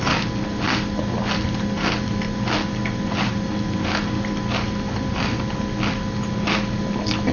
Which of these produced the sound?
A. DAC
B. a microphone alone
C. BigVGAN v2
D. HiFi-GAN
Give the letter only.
B